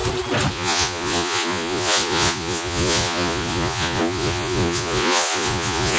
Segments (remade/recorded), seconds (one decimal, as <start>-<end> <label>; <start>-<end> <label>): 0.0-0.5 recorded; 0.5-6.0 remade